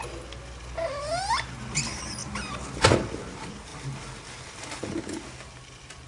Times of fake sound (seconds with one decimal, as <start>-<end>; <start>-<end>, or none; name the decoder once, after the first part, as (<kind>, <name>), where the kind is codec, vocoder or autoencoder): none